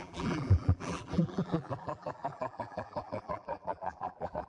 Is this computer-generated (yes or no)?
yes